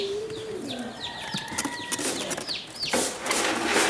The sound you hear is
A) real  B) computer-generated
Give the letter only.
A